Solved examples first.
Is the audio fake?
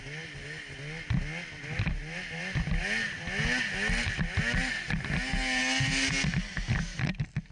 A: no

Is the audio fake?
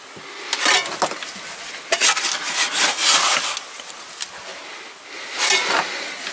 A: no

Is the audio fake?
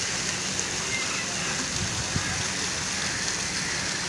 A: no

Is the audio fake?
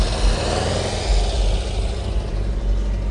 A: no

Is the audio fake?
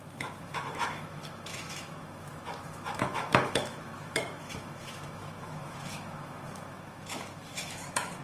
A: yes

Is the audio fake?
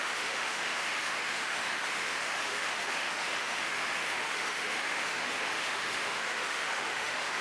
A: yes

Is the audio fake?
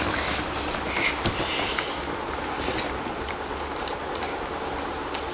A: no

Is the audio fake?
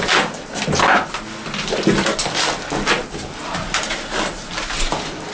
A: no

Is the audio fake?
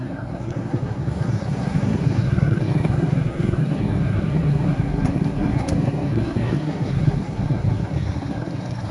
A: yes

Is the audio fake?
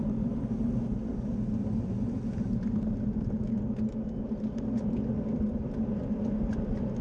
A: no